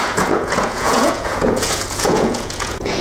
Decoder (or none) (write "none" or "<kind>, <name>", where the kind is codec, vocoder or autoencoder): vocoder, Vocos